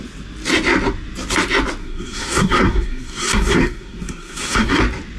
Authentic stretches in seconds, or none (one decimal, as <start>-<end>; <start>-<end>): 0.0-1.8; 4.8-5.2